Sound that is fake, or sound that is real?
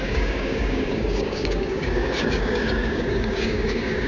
fake